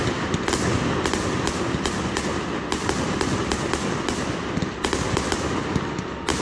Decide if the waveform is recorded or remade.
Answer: recorded